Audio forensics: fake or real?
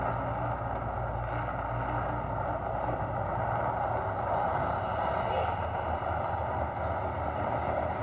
real